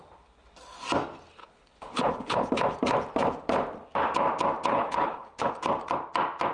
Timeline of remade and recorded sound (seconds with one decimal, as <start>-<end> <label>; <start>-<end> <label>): 0.0-1.4 recorded; 1.4-2.5 remade; 2.5-4.7 recorded; 4.7-5.5 remade; 5.5-6.5 recorded